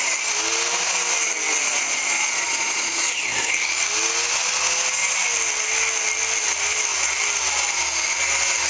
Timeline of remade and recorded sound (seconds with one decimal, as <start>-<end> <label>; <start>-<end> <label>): 0.0-1.7 recorded; 1.7-3.1 remade; 3.1-8.7 recorded